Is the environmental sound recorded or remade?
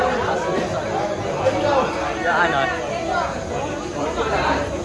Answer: recorded